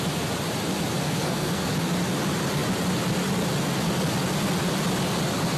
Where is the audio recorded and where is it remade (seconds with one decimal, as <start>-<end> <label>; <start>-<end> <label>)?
0.0-1.0 recorded; 1.0-1.7 remade; 1.7-5.6 recorded

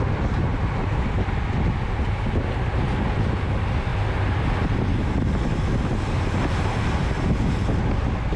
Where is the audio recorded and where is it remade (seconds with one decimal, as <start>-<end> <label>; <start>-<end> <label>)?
0.0-8.4 recorded

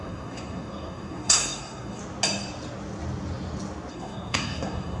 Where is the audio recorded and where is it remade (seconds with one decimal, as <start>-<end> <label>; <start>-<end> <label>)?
0.0-2.0 remade; 2.0-3.9 recorded; 3.9-5.0 remade